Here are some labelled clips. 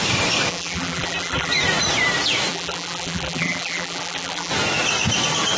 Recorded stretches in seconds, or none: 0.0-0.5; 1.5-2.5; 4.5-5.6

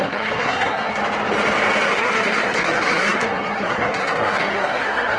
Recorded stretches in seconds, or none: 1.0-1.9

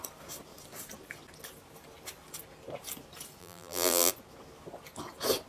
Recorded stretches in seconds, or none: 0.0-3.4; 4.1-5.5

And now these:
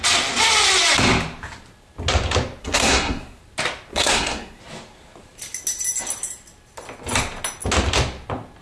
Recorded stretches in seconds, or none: 0.0-2.6; 3.4-3.9; 4.6-8.6

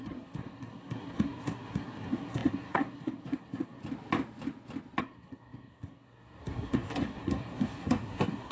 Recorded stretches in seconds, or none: 3.8-5.0